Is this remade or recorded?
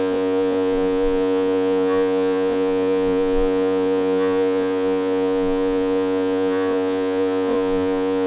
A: remade